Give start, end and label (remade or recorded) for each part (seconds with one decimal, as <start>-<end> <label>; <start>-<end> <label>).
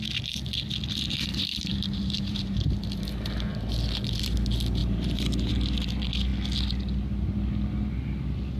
0.0-1.3 recorded; 1.3-3.7 remade; 3.7-4.8 recorded; 4.8-5.5 remade; 5.5-8.6 recorded